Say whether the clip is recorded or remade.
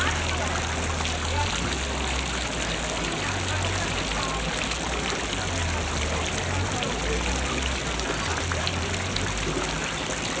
recorded